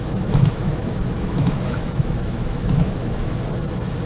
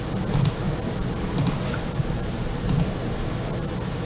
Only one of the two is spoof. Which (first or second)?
first